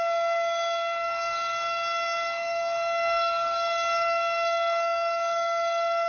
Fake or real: fake